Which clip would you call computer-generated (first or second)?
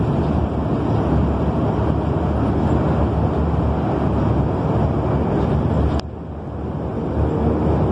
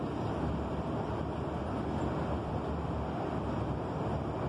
second